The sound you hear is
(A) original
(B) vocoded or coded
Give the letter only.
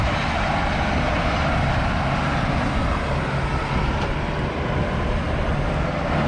A